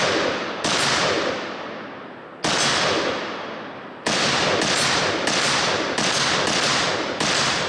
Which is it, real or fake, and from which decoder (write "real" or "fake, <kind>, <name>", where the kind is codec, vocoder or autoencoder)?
real